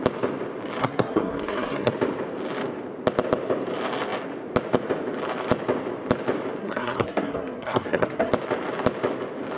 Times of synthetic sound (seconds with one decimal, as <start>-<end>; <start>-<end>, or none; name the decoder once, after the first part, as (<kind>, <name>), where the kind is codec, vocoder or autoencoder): 0.8-1.9 (codec, SNAC); 6.6-8.3